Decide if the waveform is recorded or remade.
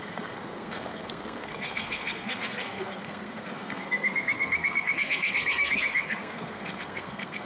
remade